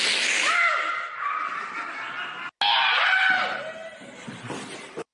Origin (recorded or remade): recorded